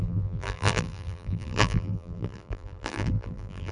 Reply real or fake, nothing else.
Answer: fake